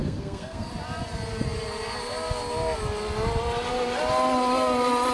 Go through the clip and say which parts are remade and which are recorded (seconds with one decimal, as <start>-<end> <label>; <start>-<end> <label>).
0.0-0.7 remade; 0.7-5.1 recorded